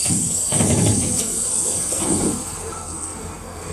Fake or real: fake